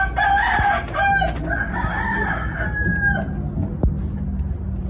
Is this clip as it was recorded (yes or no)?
yes